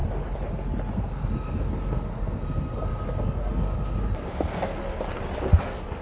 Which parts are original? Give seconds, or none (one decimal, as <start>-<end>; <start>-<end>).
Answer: 0.0-0.9; 4.8-5.6